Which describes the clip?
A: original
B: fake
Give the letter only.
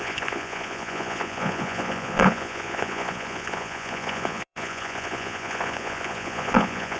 B